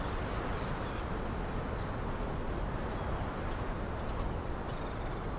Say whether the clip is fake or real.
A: real